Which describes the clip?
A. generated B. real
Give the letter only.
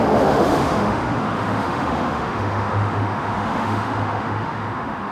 A